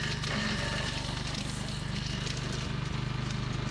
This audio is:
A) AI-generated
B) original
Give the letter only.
B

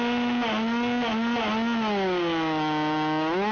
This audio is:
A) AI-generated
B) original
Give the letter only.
B